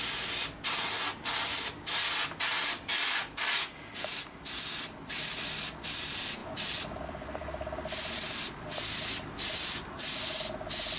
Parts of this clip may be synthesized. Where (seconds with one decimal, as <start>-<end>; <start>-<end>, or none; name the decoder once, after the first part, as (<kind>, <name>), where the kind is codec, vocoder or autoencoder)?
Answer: 2.5-5.6 (vocoder, BigVGAN v2); 6.4-9.7